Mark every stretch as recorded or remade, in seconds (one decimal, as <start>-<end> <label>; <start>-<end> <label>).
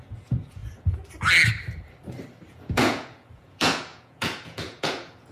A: 0.0-0.6 remade; 0.6-2.5 recorded; 2.5-5.3 remade